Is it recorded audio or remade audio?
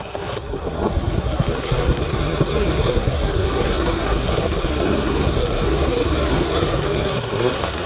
remade